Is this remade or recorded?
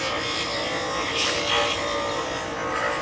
remade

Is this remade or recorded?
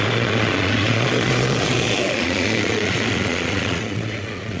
remade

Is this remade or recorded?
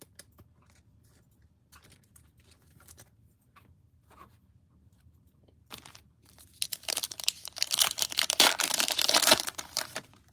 remade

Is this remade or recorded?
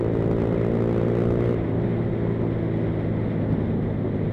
recorded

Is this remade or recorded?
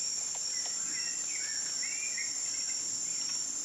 recorded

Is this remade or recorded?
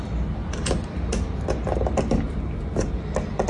recorded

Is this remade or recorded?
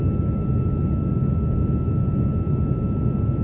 recorded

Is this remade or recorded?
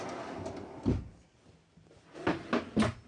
recorded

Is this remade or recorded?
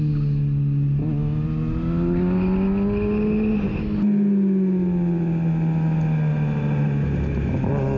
recorded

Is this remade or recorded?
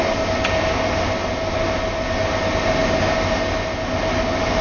recorded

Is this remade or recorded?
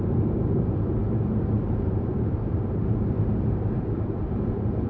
remade